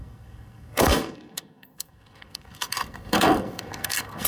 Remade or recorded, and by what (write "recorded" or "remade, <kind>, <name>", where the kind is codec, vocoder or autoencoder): remade, codec, SNAC